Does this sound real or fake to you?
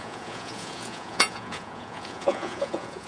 fake